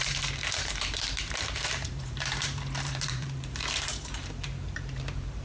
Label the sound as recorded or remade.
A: remade